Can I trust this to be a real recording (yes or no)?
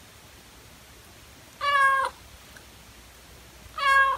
yes